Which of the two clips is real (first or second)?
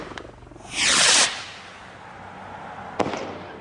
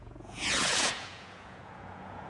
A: first